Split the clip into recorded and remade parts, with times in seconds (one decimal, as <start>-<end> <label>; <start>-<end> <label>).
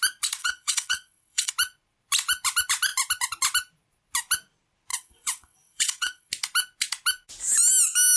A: 0.0-0.4 recorded; 0.4-1.5 remade; 1.5-4.9 recorded; 4.9-6.3 remade; 6.3-8.2 recorded